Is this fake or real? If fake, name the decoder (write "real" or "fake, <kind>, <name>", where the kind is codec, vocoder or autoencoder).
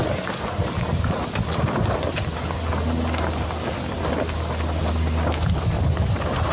real